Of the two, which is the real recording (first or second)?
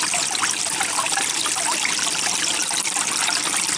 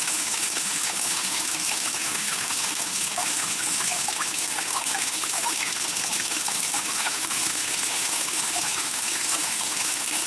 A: first